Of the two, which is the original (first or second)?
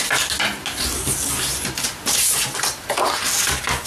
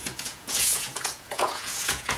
first